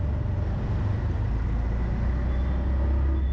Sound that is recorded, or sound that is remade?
recorded